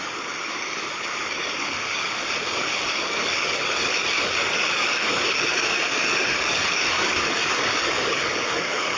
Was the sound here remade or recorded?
remade